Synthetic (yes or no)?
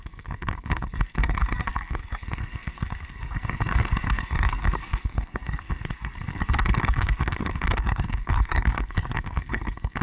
yes